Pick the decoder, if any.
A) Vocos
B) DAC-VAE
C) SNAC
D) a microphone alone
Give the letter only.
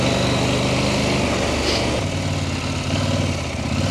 D